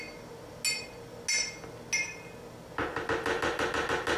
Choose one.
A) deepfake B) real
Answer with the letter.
B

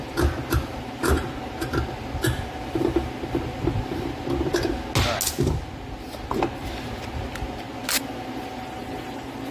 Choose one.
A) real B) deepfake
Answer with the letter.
A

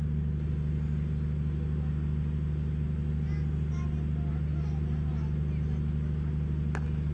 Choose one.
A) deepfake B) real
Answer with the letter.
B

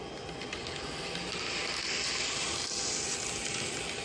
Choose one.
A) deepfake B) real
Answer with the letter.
B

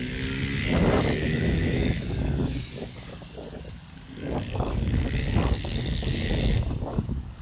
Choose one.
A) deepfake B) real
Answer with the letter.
A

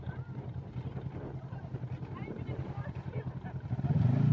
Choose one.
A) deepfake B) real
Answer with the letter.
B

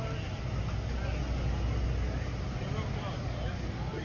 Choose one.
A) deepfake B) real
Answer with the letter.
B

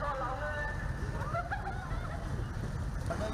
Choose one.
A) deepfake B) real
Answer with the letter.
B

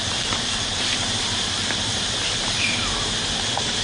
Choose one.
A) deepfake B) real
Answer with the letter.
A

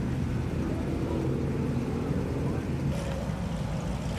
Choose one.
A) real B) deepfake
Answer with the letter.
A